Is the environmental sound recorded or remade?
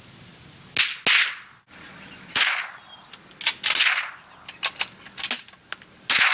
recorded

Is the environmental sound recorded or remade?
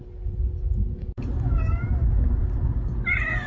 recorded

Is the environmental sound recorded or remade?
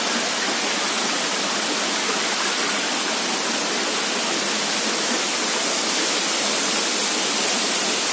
recorded